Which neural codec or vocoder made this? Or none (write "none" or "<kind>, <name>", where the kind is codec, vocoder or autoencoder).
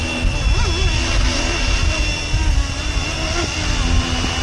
none